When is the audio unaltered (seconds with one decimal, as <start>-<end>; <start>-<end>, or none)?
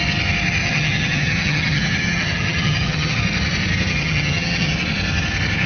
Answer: 0.0-0.6; 3.2-3.9; 4.7-5.7